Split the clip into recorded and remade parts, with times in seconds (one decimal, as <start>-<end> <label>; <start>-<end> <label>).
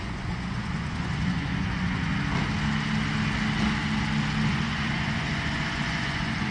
0.0-2.1 remade; 2.1-4.5 recorded; 4.5-6.5 remade